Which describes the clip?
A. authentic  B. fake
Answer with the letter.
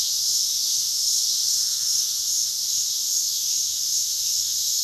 B